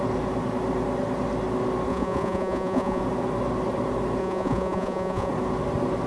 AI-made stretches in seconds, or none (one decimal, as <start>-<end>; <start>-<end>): 1.9-3.0; 4.2-5.3